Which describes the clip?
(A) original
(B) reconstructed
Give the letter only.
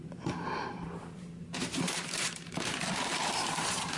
B